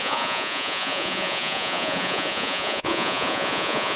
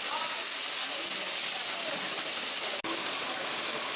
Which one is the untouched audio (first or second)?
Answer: second